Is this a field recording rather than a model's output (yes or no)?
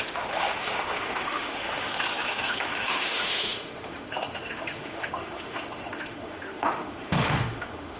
no